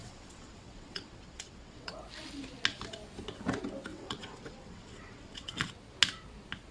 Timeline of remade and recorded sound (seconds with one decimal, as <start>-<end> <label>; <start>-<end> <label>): 0.0-1.9 remade; 1.9-3.9 recorded; 3.9-5.7 remade; 5.7-6.7 recorded

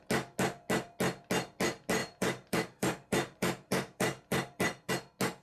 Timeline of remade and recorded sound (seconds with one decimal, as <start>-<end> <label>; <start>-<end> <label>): 0.0-2.0 recorded; 2.0-4.9 remade; 4.9-5.4 recorded

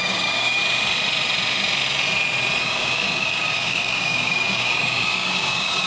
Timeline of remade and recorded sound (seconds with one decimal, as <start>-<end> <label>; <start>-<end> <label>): 0.0-0.6 remade; 0.6-2.6 recorded; 2.6-5.9 remade